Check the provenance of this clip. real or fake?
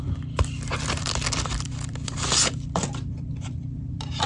fake